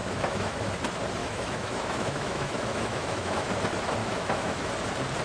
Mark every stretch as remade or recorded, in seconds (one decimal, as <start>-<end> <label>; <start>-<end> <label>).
0.0-0.6 remade; 0.6-1.2 recorded; 1.2-3.5 remade; 3.5-4.0 recorded; 4.0-4.7 remade; 4.7-5.2 recorded